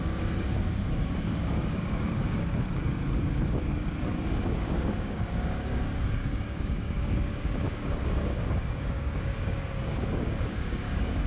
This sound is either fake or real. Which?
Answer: fake